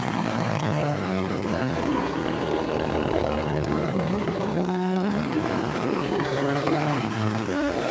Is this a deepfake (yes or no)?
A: yes